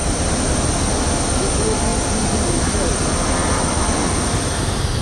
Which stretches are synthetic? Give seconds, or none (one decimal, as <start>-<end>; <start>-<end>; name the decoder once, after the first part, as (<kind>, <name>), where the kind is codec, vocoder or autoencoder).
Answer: 0.0-0.6 (vocoder, BigVGAN v2); 1.9-3.8